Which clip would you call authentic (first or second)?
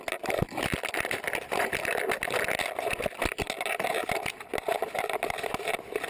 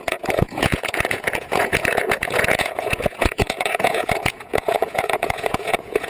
first